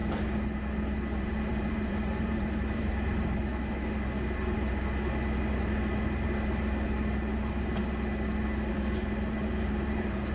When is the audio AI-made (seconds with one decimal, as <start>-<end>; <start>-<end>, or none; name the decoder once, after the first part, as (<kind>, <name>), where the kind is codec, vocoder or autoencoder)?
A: 1.2-3.5 (vocoder, BigVGAN v2); 8.7-10.3